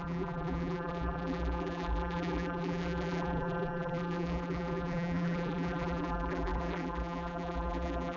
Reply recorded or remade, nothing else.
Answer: remade